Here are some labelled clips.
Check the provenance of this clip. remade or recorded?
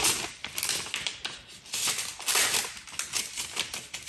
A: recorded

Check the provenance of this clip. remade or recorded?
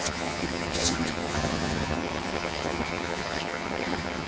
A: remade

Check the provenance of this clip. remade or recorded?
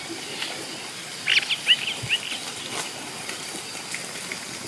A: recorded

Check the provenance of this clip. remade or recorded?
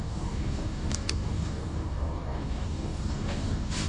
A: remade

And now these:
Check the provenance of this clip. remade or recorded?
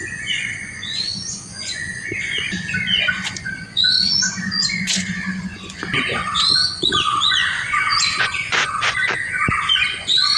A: remade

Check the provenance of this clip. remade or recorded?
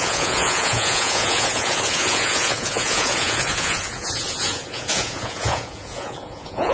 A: remade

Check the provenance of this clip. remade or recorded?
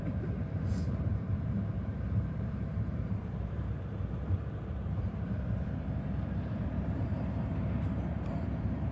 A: remade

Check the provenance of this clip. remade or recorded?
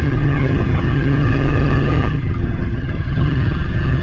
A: remade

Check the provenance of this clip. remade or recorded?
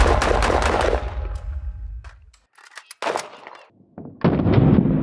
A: recorded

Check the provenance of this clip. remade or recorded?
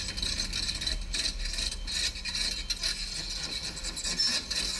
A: recorded